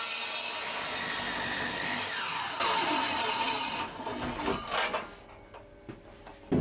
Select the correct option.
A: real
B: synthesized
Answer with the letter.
A